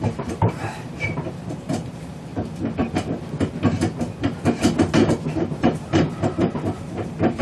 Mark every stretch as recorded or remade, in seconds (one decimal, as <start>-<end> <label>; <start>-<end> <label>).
0.0-2.3 remade; 2.3-5.9 recorded; 5.9-7.4 remade